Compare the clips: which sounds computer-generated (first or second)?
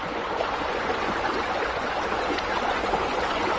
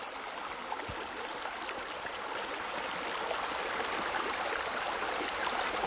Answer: first